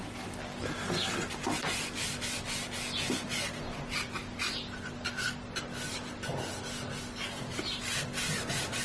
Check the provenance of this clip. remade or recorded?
recorded